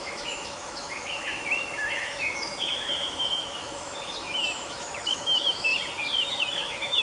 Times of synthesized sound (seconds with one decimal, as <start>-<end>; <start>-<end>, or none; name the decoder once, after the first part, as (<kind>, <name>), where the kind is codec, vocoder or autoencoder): 0.0-5.7 (autoencoder, DAC-VAE); 6.3-7.0